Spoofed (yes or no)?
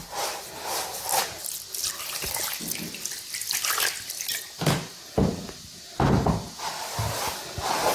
no